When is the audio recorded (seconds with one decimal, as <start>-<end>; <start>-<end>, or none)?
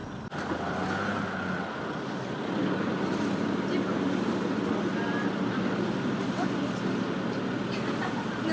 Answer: 0.0-8.5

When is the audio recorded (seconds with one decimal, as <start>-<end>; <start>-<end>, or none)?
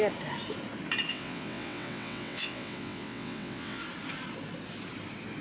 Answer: 0.0-1.1; 3.8-5.4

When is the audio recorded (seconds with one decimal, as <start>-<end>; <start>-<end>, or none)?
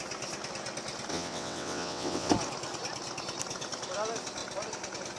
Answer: 0.0-1.1; 2.3-5.2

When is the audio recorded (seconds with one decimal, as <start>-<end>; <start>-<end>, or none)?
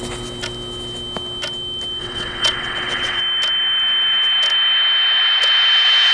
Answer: 0.0-2.0; 3.2-6.1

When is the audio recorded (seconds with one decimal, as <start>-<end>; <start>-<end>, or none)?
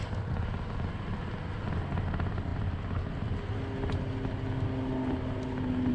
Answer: 0.0-5.9